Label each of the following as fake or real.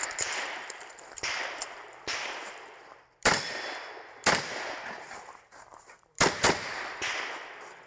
fake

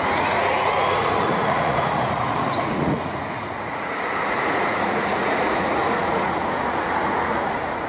fake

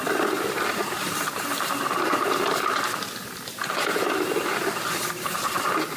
fake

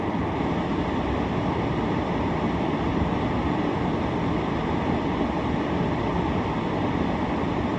real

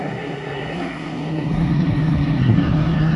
fake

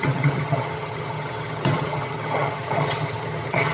fake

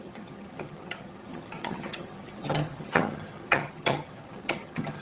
fake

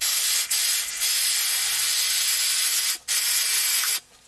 real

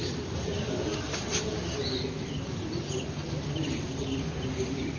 real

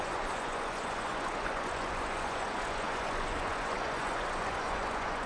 fake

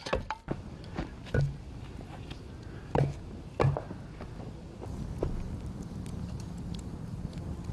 real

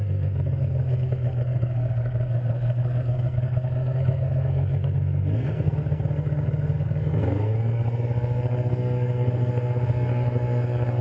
fake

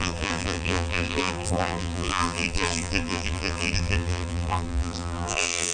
fake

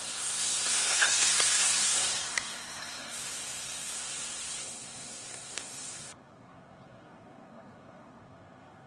fake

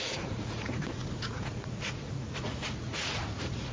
fake